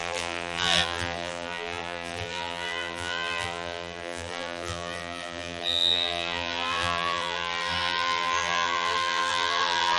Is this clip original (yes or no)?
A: no